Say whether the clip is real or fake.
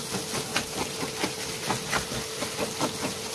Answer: real